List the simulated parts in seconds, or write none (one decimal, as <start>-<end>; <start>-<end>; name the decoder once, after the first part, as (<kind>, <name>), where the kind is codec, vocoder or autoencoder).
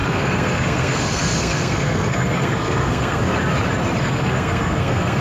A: 0.0-3.2 (codec, SNAC); 4.0-5.2